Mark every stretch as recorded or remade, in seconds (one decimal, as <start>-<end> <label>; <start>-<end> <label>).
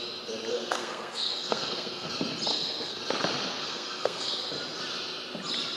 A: 0.0-0.5 recorded; 0.5-2.1 remade; 2.1-2.5 recorded; 2.5-3.0 remade; 3.0-3.5 recorded; 3.5-4.5 remade; 4.5-5.8 recorded